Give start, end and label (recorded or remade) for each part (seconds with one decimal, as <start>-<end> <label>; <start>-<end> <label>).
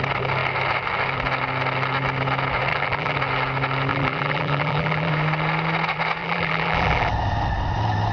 0.0-2.7 recorded; 2.7-3.2 remade; 3.2-3.9 recorded; 3.9-5.1 remade; 5.1-6.2 recorded; 6.2-7.1 remade; 7.1-8.1 recorded